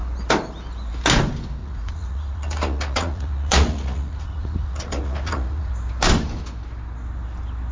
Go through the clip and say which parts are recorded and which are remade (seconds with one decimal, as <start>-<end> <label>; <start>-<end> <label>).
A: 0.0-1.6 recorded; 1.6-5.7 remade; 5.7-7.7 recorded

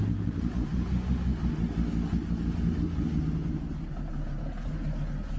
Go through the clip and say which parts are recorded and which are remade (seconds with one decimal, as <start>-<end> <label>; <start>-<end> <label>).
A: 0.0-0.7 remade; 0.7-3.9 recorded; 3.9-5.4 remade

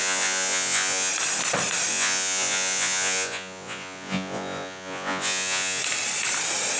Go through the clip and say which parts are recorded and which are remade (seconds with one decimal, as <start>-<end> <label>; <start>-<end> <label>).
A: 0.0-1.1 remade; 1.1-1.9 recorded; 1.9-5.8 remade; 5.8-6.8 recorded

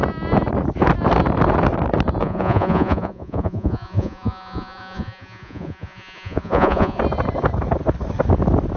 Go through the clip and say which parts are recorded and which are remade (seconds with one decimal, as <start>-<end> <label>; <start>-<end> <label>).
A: 0.0-2.2 recorded; 2.2-7.0 remade; 7.0-8.8 recorded

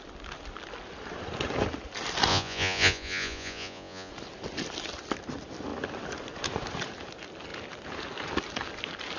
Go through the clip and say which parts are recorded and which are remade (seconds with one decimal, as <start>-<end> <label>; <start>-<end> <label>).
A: 0.0-2.3 recorded; 2.3-4.1 remade; 4.1-9.2 recorded